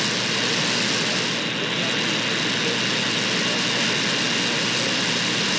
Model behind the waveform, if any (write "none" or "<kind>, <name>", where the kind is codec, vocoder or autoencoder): none